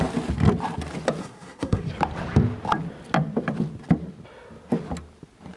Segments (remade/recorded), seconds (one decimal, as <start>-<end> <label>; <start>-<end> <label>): 0.0-1.2 recorded; 1.2-1.9 remade; 1.9-5.6 recorded